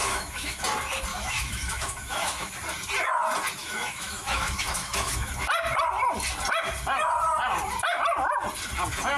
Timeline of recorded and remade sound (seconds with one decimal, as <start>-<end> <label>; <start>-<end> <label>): 0.0-0.6 remade; 0.6-1.1 recorded; 1.1-2.5 remade; 2.5-3.6 recorded; 3.6-5.3 remade; 5.3-9.2 recorded